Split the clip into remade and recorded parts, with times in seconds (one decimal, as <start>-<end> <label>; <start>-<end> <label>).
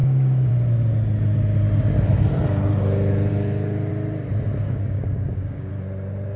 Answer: 0.0-0.5 remade; 0.5-3.3 recorded; 3.3-3.9 remade; 3.9-4.6 recorded; 4.6-5.7 remade; 5.7-6.4 recorded